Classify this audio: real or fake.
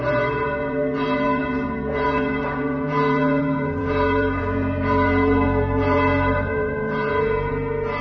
fake